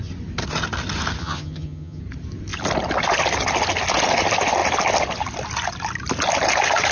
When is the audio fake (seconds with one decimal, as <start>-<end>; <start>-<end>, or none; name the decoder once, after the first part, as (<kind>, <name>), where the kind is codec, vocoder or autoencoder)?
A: 1.2-2.0 (vocoder, HiFi-GAN)